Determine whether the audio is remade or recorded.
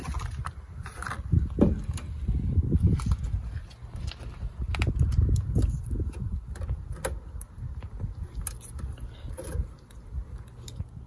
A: recorded